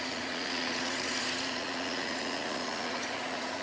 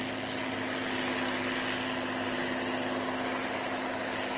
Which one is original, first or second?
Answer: second